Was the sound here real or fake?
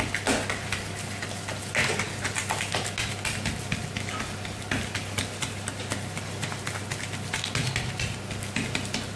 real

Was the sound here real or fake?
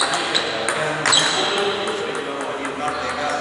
real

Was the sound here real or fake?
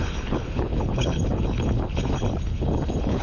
fake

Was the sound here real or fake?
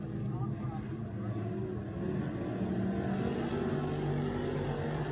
real